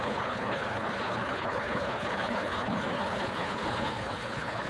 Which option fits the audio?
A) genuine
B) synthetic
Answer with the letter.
B